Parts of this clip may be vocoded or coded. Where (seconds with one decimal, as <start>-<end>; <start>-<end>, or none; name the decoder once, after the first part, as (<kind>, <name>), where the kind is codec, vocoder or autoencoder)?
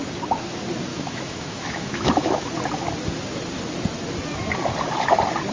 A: 0.9-2.5 (autoencoder, DAC-VAE)